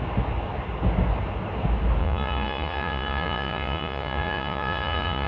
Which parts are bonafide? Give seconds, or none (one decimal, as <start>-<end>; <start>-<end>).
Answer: 0.0-2.0